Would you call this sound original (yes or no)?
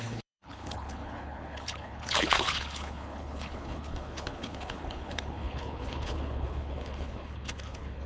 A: no